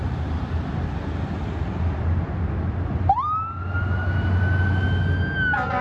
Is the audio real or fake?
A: real